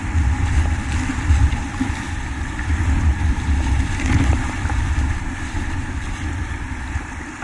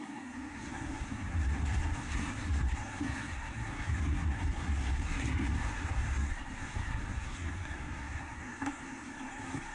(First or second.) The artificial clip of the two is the second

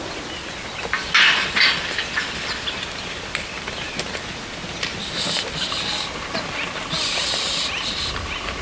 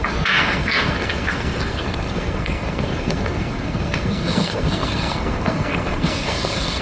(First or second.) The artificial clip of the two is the second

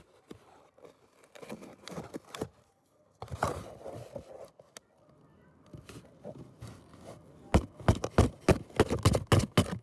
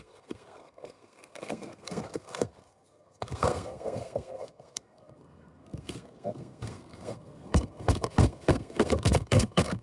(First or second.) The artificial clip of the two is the second